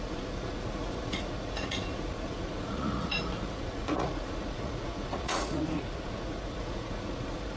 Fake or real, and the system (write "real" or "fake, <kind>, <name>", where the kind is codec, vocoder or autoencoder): fake, vocoder, Vocos